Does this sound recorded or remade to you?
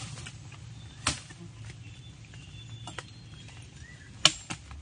recorded